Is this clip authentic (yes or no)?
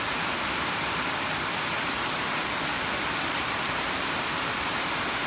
no